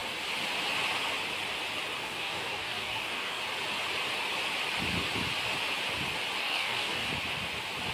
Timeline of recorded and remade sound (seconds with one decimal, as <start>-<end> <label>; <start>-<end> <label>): 0.0-2.0 recorded; 2.0-3.4 remade; 3.4-6.4 recorded; 6.4-7.1 remade; 7.1-7.9 recorded